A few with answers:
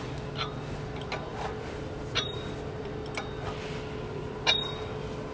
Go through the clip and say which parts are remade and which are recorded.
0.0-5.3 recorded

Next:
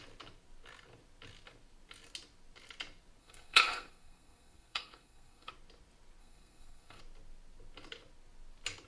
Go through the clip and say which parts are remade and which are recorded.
0.0-3.2 recorded; 3.2-5.5 remade; 5.5-6.2 recorded; 6.2-7.0 remade; 7.0-8.9 recorded